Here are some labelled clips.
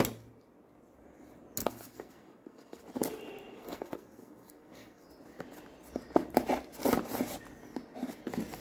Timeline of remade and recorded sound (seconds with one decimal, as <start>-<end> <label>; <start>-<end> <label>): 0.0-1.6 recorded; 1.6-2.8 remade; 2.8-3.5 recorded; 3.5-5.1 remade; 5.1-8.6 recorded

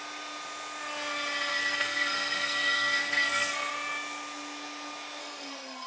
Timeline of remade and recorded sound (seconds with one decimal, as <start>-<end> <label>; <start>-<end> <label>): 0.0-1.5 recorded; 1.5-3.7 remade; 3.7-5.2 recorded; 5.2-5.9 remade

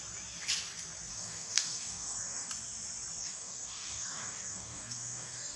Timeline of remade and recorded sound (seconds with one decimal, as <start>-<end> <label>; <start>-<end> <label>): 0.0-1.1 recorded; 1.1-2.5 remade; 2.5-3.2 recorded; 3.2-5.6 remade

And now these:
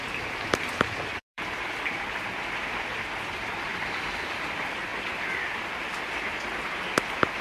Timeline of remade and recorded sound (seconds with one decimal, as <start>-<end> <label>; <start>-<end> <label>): 0.0-3.7 remade; 3.7-4.5 recorded; 4.5-4.9 remade; 4.9-5.8 recorded; 5.8-7.4 remade